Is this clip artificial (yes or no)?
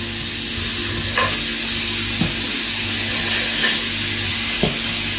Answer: no